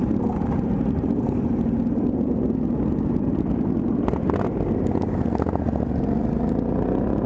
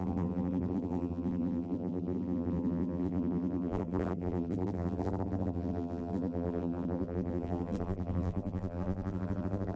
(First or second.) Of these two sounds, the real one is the first